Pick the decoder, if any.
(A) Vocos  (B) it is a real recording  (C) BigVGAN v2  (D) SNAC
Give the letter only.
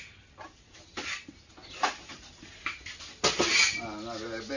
B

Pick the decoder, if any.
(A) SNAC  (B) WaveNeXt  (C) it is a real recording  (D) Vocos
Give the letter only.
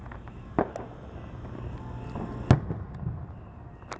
C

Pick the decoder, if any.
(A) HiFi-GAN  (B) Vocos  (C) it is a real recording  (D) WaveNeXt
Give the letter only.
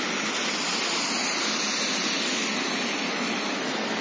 C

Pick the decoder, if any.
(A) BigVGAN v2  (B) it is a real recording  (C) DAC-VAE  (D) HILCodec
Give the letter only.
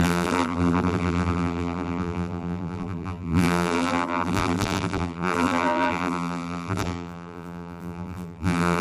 A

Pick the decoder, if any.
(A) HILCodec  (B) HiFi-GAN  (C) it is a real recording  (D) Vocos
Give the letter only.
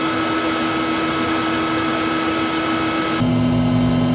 C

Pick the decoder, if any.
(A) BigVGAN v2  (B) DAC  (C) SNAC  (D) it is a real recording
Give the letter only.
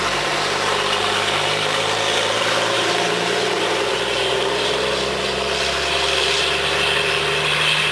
A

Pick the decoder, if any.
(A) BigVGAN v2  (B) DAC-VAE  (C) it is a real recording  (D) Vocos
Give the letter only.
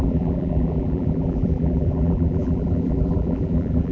A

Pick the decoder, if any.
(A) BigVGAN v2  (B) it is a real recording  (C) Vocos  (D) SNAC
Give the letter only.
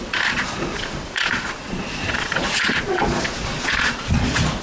C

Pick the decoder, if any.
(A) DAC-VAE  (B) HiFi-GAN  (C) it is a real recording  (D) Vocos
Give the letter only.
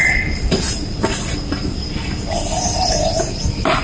C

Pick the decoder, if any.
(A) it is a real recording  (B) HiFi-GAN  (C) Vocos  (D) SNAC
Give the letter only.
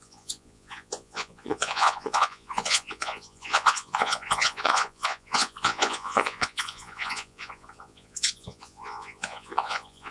C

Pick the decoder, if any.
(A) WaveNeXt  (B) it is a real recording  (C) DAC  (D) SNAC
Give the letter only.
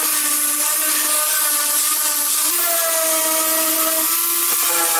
B